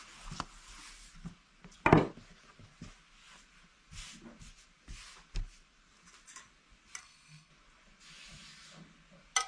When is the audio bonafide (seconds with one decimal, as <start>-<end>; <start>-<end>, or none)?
0.0-7.0; 7.5-9.5